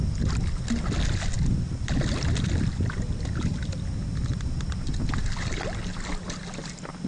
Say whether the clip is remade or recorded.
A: recorded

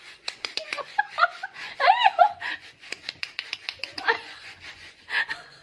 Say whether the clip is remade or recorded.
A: remade